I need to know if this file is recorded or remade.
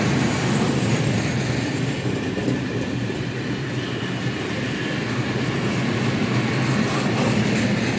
recorded